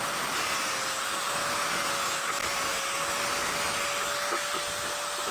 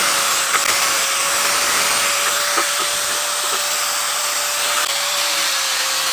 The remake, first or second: second